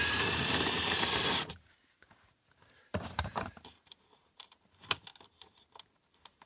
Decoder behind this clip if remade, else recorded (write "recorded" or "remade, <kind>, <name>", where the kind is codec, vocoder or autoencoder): remade, vocoder, BigVGAN v2